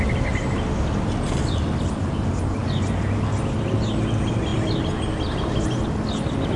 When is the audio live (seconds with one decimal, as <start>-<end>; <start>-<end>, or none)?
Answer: 0.0-6.6